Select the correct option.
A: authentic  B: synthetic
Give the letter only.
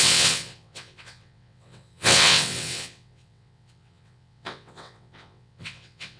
B